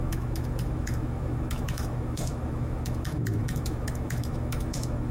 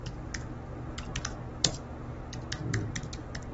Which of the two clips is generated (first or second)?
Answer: first